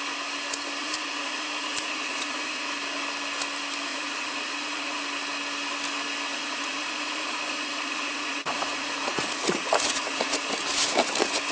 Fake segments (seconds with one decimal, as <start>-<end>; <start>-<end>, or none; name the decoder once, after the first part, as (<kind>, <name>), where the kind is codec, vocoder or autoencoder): 0.8-2.7 (vocoder, Vocos); 3.9-5.0; 6.3-10.5